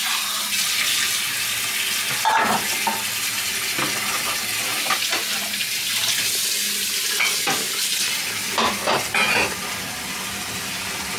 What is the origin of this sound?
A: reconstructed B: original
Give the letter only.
B